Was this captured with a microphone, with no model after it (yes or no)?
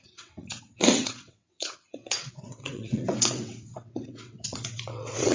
no